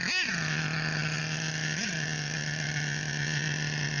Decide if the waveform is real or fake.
real